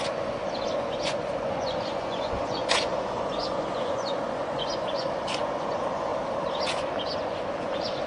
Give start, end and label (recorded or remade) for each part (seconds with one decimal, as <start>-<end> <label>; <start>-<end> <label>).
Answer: 0.0-6.1 remade; 6.1-6.6 recorded; 6.6-8.1 remade